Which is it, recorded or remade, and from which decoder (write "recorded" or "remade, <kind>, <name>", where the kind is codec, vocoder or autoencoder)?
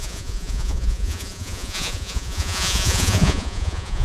remade, vocoder, Vocos